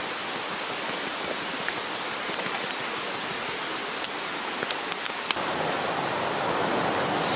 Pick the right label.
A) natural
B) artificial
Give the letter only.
A